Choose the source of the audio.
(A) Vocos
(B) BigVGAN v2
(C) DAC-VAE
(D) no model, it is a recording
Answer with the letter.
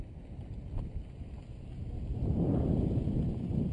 D